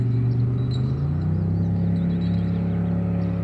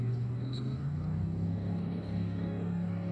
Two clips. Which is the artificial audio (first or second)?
second